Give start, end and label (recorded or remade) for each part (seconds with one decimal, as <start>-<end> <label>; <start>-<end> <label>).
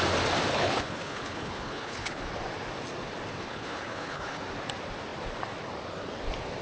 0.0-0.5 recorded; 0.5-2.2 remade; 2.2-3.5 recorded; 3.5-4.4 remade; 4.4-6.6 recorded